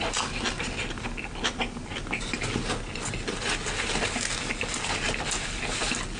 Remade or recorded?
recorded